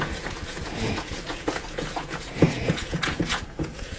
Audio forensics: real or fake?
fake